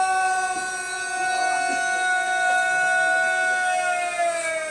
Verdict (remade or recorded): recorded